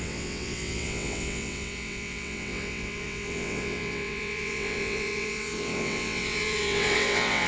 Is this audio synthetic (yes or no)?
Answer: yes